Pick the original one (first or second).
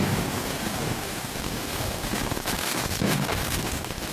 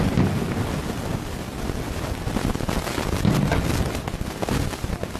second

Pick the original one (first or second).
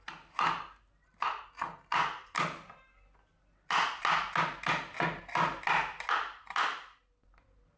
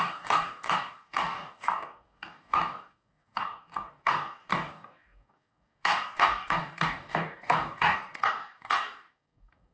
first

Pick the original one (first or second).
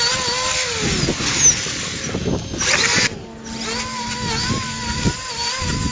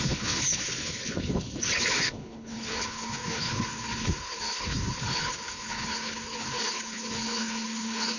first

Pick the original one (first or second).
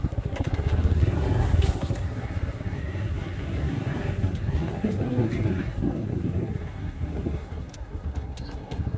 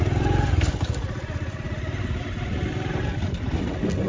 second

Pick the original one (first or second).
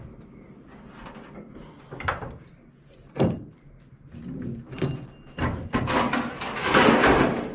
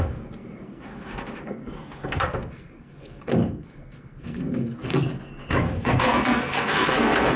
first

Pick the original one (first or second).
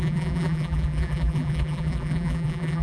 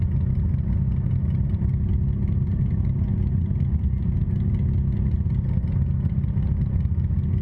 second